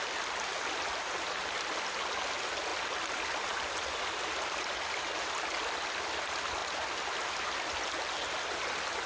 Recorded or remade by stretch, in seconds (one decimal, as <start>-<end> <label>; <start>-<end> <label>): 0.0-9.1 recorded

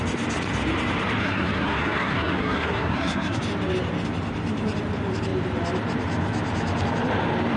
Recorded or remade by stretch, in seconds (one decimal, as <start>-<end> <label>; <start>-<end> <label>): 0.0-1.2 recorded; 1.2-3.4 remade; 3.4-7.6 recorded

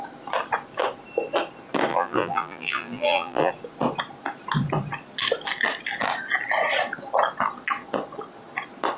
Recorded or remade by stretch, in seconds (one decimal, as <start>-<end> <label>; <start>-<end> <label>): 0.0-1.9 recorded; 1.9-3.5 remade; 3.5-9.0 recorded

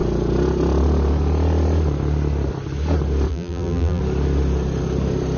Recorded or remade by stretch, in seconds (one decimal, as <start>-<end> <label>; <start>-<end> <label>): 0.0-3.3 recorded; 3.3-4.0 remade; 4.0-5.4 recorded

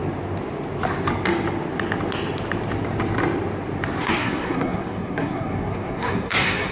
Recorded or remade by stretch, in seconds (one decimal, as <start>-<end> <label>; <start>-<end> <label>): 0.0-4.0 recorded; 4.0-6.7 remade